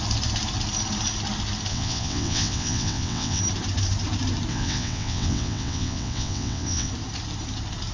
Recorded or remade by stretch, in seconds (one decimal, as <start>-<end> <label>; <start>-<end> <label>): 0.0-1.7 recorded; 1.7-3.4 remade; 3.4-4.5 recorded; 4.5-6.9 remade; 6.9-7.9 recorded

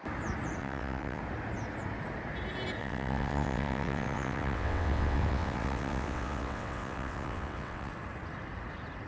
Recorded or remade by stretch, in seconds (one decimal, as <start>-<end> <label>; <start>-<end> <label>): 0.0-0.6 recorded; 0.6-1.2 remade; 1.2-2.8 recorded; 2.8-7.9 remade; 7.9-9.1 recorded